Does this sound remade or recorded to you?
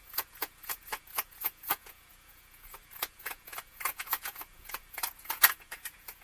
remade